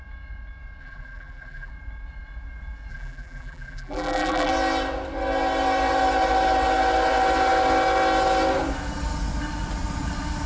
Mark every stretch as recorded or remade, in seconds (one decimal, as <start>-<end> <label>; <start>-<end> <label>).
0.0-0.8 recorded; 0.8-1.7 remade; 1.7-2.9 recorded; 2.9-4.5 remade; 4.5-10.5 recorded